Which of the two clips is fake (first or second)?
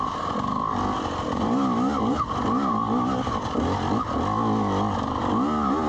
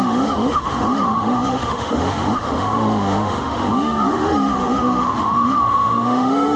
second